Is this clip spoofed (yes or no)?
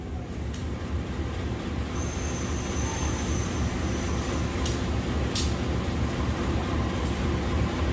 no